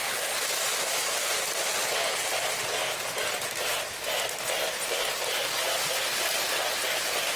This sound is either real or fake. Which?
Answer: real